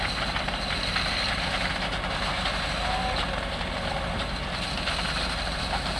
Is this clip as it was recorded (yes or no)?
yes